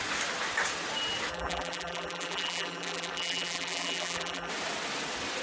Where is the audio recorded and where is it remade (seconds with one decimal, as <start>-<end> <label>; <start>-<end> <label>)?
0.0-1.3 recorded; 1.3-4.5 remade; 4.5-5.4 recorded